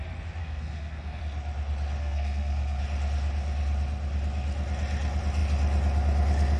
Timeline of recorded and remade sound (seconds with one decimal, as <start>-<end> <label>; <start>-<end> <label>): 0.0-0.4 recorded; 0.4-1.2 remade; 1.2-2.0 recorded; 2.0-2.8 remade; 2.8-6.6 recorded